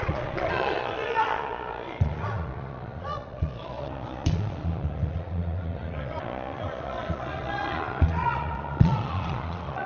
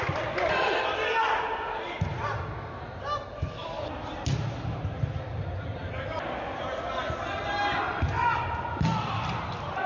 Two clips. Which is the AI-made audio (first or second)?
first